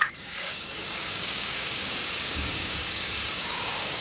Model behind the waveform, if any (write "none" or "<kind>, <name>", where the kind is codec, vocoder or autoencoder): codec, DAC